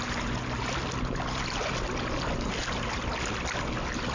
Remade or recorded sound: recorded